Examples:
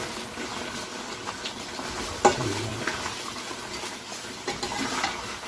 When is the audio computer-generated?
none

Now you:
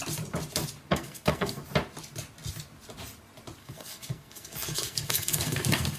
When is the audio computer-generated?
0.9-1.6 (codec, SNAC); 3.6-6.0

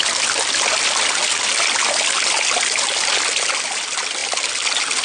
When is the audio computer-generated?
none

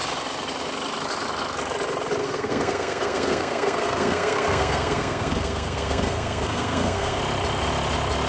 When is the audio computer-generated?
2.2-7.2 (codec, SNAC)

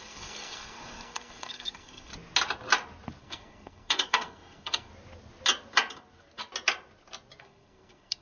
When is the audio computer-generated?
0.0-2.1 (codec, SNAC); 3.2-4.9; 7.4-8.2

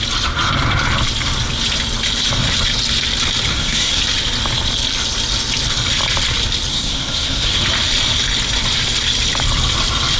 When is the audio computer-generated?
3.5-4.0 (codec, SNAC); 6.7-7.6